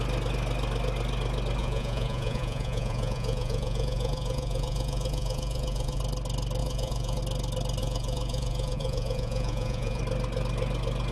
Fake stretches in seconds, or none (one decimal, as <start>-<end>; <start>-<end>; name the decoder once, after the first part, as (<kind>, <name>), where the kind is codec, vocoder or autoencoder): 1.6-6.0 (vocoder, Vocos); 6.6-7.2; 7.8-10.0